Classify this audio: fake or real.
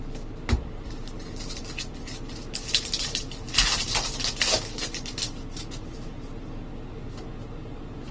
real